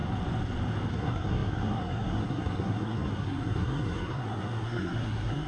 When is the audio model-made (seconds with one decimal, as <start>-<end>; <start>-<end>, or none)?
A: 0.9-5.5